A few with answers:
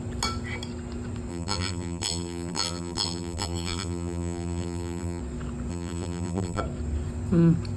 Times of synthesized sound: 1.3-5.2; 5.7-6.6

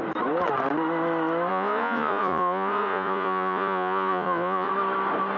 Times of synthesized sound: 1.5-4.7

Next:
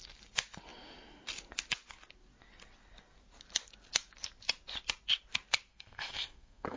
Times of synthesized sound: 5.7-6.8

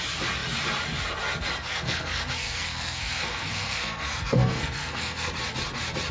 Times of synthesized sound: 1.6-5.3

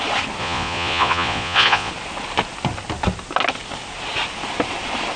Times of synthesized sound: 0.4-1.9